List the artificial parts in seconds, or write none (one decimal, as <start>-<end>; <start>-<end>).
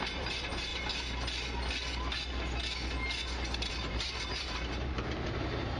0.0-0.7; 3.7-5.8